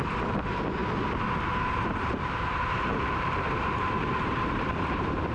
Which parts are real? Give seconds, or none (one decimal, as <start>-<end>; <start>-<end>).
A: 0.8-1.7; 2.9-3.4